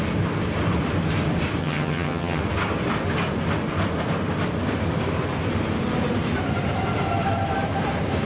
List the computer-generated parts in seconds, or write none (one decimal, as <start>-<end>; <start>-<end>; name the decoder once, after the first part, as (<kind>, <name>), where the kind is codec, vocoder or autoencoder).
1.6-2.4 (vocoder, HiFi-GAN)

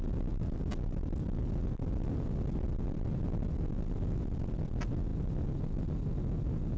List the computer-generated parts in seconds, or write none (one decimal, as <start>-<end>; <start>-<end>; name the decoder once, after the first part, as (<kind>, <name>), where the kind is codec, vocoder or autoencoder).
none

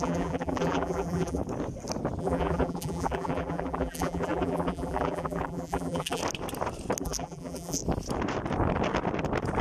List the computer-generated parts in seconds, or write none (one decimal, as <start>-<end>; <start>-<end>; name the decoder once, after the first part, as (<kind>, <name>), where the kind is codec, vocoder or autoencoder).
0.0-1.4 (vocoder, BigVGAN v2); 2.2-6.2; 7.0-7.8

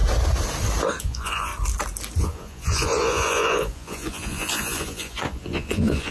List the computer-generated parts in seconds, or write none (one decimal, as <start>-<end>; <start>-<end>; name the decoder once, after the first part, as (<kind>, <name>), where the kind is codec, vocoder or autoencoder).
1.0-1.5 (vocoder, Vocos); 2.2-6.1

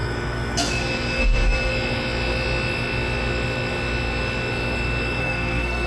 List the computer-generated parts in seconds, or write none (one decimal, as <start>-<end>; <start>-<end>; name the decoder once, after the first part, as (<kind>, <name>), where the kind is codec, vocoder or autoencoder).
1.2-1.7 (codec, SNAC); 5.2-5.9

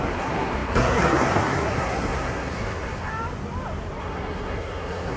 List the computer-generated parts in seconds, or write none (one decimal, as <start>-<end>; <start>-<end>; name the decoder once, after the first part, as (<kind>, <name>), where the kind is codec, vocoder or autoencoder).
0.0-3.1 (codec, SNAC); 4.0-5.2

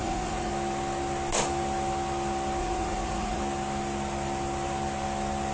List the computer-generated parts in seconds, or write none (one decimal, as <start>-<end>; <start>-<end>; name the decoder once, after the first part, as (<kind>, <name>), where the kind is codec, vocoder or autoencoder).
0.0-0.5 (vocoder, Vocos); 2.6-3.4

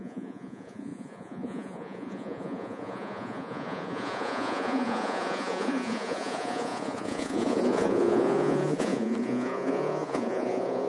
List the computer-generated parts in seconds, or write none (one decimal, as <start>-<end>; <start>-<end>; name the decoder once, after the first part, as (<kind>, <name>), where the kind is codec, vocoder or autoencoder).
0.0-10.9 (vocoder, Vocos)